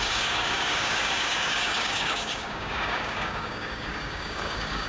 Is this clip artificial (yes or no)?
yes